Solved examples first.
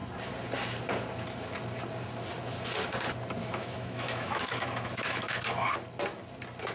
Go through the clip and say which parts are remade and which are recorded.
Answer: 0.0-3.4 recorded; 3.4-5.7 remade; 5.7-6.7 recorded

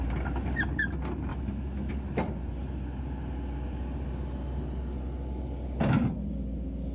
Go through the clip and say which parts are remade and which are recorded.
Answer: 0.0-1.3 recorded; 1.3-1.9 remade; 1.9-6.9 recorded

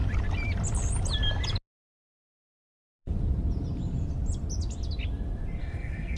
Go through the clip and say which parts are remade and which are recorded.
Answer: 0.0-5.6 recorded; 5.6-6.2 remade

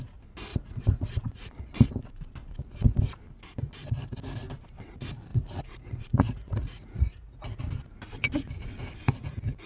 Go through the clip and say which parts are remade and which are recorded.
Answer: 0.0-0.5 recorded; 0.5-1.5 remade; 1.5-5.3 recorded; 5.3-7.7 remade; 7.7-9.7 recorded

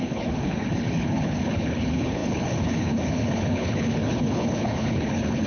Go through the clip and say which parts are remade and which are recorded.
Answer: 0.0-5.5 remade

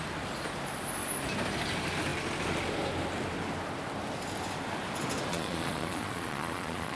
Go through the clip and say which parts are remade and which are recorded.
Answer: 0.0-5.3 recorded; 5.3-7.0 remade